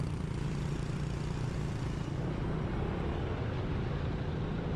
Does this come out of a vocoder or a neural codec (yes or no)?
no